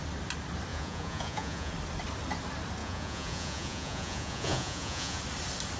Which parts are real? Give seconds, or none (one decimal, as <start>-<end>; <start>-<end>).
0.0-0.7; 1.7-2.8; 5.2-5.8